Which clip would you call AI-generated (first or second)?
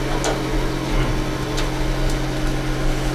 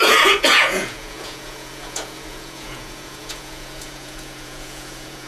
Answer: second